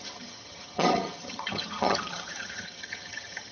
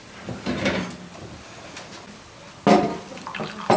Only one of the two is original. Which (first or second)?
second